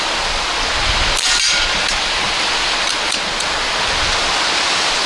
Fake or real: real